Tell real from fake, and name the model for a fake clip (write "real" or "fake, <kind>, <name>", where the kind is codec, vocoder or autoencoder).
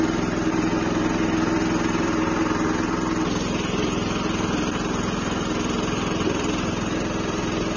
real